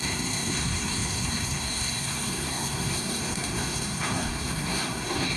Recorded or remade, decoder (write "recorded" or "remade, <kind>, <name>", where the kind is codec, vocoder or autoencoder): remade, codec, SNAC